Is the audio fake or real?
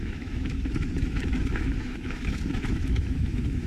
fake